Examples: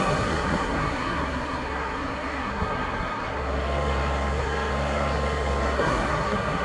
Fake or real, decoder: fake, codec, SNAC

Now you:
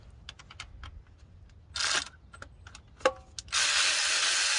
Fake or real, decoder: real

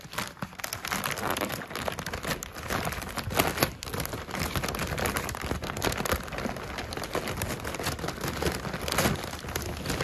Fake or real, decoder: real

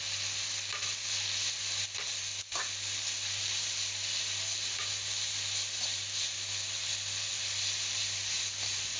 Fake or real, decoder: real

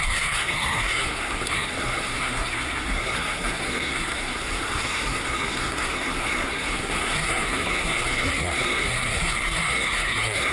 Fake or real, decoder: fake, codec, SNAC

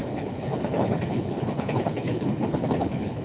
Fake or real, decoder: fake, codec, HILCodec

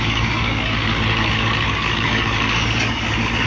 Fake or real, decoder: fake, codec, DAC